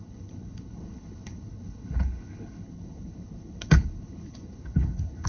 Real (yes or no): no